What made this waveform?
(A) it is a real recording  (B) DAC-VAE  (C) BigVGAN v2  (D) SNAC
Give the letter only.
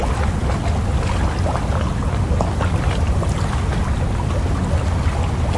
A